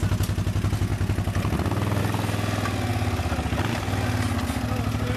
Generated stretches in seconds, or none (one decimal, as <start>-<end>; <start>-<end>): none